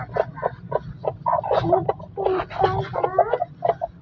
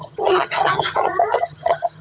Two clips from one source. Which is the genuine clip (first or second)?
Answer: first